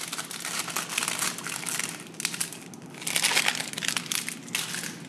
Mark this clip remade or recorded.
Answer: recorded